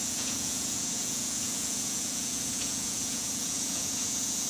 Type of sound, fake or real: fake